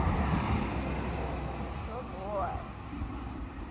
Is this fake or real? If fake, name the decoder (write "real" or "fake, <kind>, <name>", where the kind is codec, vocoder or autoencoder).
real